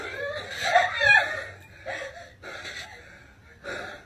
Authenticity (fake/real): fake